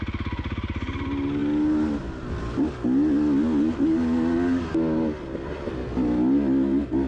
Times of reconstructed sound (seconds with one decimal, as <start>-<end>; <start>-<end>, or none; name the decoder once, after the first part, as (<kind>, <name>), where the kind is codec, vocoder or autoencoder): none